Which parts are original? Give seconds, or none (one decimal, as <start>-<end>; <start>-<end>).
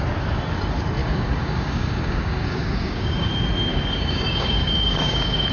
0.0-1.0; 3.3-3.7